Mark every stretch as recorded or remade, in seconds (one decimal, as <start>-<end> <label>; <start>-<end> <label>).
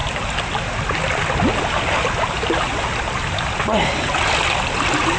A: 0.0-5.2 recorded